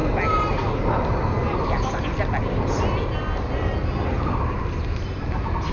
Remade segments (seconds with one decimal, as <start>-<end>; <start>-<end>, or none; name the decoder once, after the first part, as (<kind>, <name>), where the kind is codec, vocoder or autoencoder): none